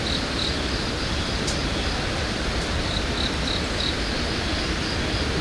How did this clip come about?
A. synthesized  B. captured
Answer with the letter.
B